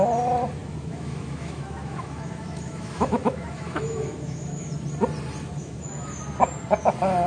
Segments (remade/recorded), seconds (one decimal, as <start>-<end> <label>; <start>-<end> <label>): 0.0-0.6 recorded; 0.6-4.7 remade; 4.7-5.6 recorded; 5.6-6.2 remade; 6.2-7.3 recorded